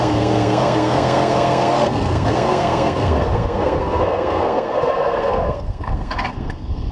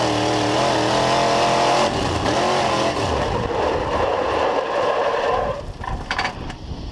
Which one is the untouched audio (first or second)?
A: second